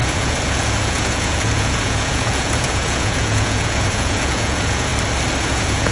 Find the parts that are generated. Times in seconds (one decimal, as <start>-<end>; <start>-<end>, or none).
0.0-4.9; 5.4-5.9